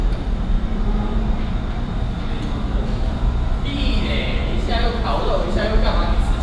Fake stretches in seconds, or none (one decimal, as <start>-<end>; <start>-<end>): 0.0-6.4